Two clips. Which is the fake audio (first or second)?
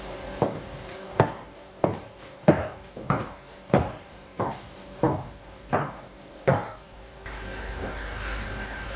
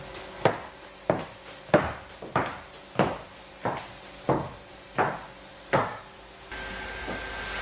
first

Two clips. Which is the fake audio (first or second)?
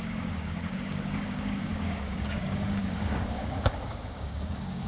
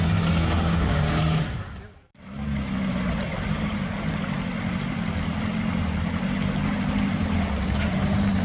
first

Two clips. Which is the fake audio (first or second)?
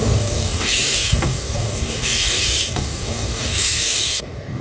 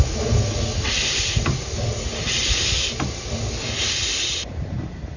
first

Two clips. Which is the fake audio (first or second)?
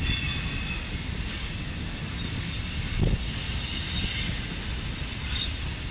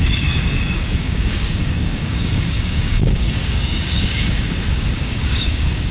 second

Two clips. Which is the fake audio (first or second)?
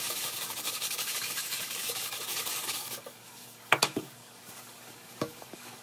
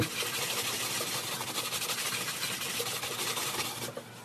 first